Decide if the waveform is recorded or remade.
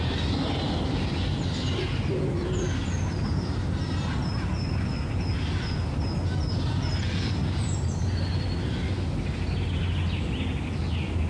recorded